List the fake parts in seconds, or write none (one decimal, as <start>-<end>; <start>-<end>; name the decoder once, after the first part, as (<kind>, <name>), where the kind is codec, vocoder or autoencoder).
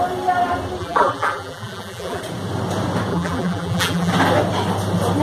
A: 0.8-2.2 (vocoder, BigVGAN v2); 3.1-4.1